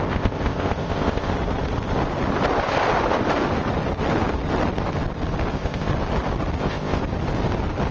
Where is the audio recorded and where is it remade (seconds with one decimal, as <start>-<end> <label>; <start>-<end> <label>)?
0.0-1.3 remade; 1.3-5.5 recorded; 5.5-5.9 remade; 5.9-6.6 recorded; 6.6-7.0 remade; 7.0-7.9 recorded